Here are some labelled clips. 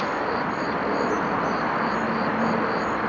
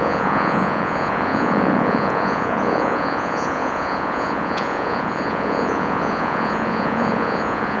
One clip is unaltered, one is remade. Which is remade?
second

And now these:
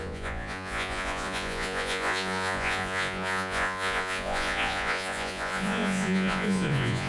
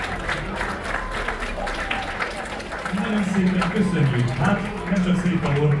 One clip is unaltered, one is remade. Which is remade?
first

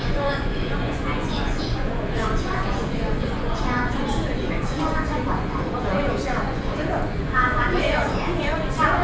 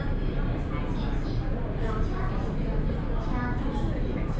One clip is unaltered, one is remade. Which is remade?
first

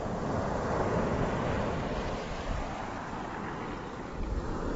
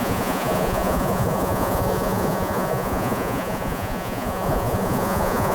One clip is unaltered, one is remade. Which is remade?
second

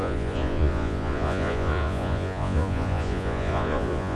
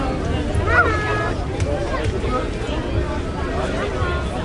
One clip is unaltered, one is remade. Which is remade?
first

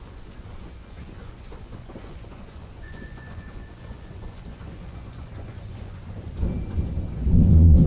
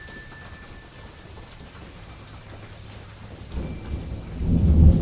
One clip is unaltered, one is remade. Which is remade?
first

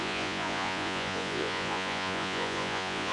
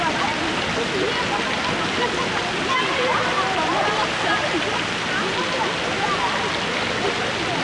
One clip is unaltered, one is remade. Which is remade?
first